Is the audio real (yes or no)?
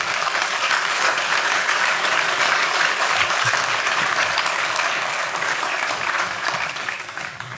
no